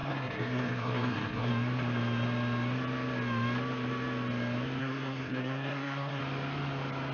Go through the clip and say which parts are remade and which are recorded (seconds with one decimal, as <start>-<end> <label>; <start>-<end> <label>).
0.0-1.5 remade; 1.5-4.8 recorded; 4.8-6.2 remade; 6.2-7.1 recorded